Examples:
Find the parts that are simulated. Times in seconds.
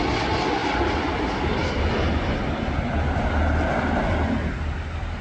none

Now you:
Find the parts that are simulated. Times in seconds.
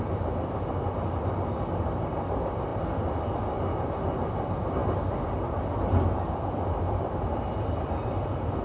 none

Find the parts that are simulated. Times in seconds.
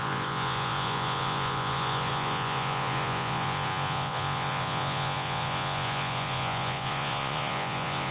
0.0-8.1